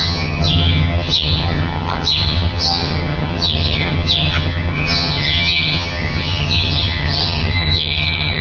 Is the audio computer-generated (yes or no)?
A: yes